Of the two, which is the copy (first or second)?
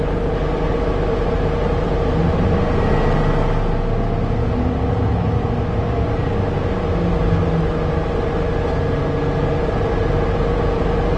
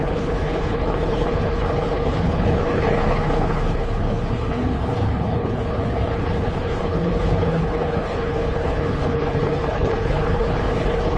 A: second